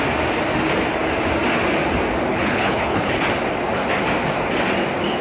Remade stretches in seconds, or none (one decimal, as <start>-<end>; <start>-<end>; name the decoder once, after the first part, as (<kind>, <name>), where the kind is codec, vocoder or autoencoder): 2.3-3.2 (codec, HILCodec)